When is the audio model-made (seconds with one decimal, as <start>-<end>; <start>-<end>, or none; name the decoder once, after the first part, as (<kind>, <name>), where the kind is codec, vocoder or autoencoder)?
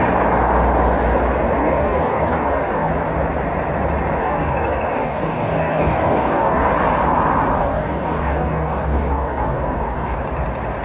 1.6-2.9 (codec, DAC); 4.2-6.7; 7.6-10.2